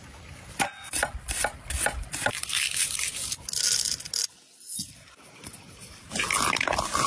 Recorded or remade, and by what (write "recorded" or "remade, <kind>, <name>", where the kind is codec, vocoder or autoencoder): recorded